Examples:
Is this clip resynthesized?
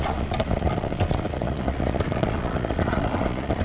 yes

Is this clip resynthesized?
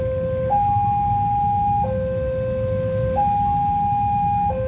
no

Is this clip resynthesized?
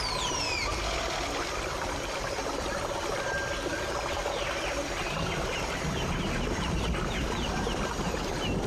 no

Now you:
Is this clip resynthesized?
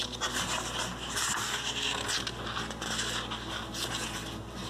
no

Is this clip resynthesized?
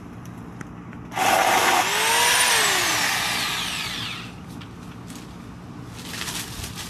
no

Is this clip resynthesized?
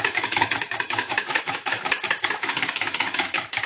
yes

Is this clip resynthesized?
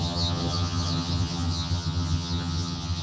yes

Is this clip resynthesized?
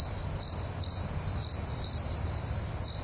no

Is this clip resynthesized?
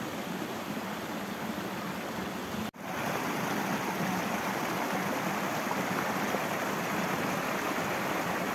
no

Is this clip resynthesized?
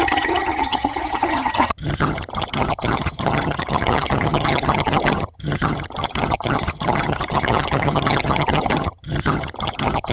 yes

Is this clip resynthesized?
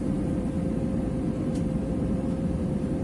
yes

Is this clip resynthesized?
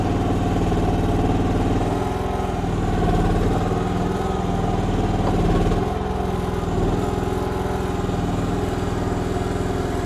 no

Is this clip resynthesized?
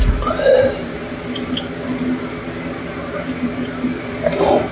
no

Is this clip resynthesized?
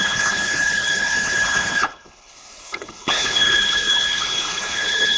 yes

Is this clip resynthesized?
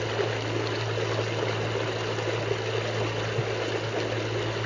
no